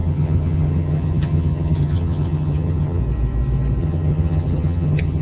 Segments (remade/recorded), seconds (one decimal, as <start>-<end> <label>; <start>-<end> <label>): 0.0-3.0 remade; 3.0-3.8 recorded; 3.8-5.2 remade